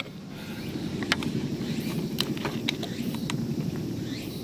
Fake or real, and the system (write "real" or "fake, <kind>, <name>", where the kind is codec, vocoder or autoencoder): real